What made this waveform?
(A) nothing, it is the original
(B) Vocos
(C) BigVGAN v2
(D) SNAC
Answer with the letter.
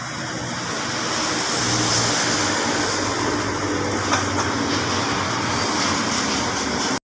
A